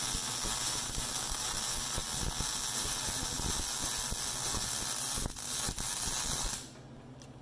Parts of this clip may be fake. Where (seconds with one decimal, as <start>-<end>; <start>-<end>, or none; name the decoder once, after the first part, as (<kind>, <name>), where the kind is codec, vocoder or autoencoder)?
none